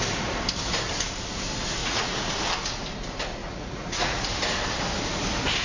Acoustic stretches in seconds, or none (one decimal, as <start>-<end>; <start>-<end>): 0.0-1.8; 2.3-3.4; 4.3-5.6